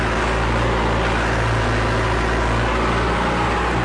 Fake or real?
real